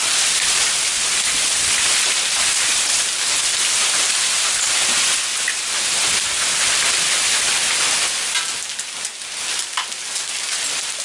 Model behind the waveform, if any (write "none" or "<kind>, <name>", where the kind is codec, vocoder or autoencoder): none